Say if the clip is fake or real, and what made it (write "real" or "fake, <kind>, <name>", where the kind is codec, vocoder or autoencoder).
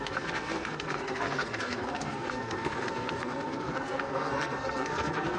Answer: fake, codec, SNAC